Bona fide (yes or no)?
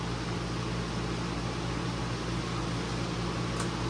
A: yes